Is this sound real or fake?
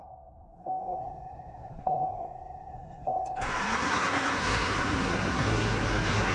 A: fake